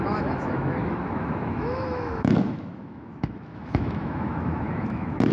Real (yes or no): no